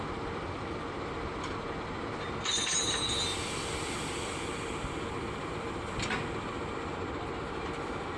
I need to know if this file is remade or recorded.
recorded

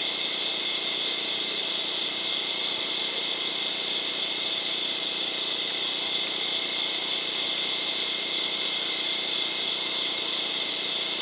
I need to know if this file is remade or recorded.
recorded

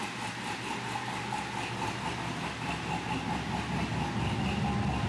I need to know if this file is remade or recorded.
recorded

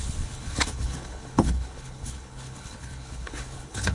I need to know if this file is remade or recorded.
remade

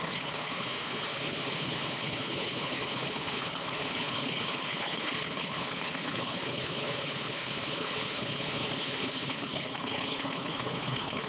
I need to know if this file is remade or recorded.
remade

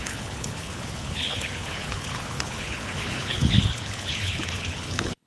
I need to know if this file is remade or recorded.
remade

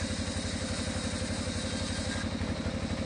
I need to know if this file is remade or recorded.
recorded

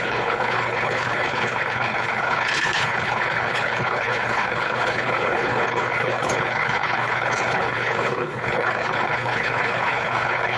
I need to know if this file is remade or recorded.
remade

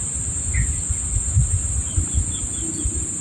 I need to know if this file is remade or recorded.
recorded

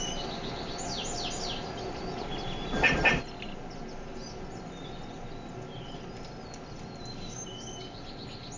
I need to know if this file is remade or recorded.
recorded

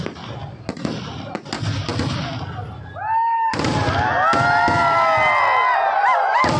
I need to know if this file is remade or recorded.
recorded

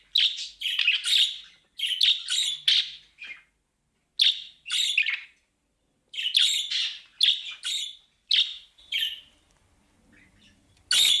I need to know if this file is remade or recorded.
recorded